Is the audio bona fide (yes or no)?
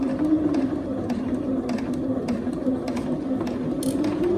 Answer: yes